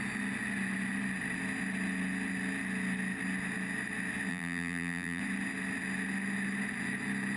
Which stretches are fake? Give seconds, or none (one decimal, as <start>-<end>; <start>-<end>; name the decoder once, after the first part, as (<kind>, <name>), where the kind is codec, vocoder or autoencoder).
4.3-5.2 (vocoder, BigVGAN v2)